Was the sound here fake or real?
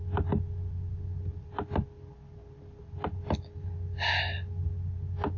real